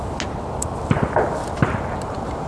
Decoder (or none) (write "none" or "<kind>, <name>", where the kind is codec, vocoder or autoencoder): none